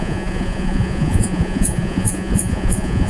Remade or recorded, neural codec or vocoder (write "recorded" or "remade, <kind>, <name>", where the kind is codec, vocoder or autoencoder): remade, vocoder, Vocos